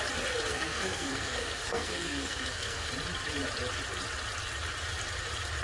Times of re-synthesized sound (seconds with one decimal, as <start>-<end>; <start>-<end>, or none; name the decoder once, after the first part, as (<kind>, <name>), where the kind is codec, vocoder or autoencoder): 0.5-2.9 (codec, SNAC)